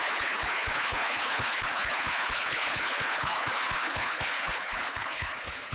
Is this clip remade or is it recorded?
remade